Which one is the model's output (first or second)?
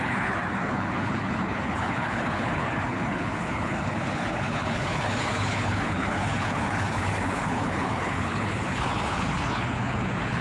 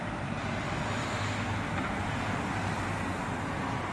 first